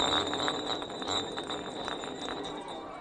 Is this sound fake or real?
real